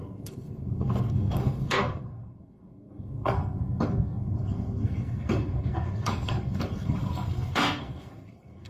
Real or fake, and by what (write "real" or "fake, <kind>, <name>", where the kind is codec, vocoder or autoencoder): fake, codec, SNAC